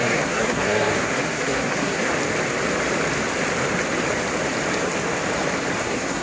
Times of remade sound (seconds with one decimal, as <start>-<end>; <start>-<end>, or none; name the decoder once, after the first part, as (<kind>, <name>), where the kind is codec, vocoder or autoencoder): 0.0-2.1 (codec, SNAC); 5.8-6.2